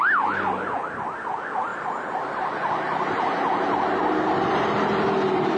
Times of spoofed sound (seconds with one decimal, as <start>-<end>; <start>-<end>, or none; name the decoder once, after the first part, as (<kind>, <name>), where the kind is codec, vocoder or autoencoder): none